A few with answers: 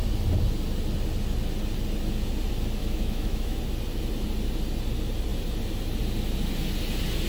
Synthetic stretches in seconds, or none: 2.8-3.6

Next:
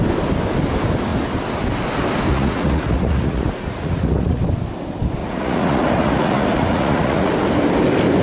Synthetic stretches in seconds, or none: 2.3-4.4; 5.2-7.3